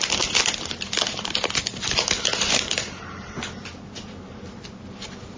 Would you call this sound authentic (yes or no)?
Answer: yes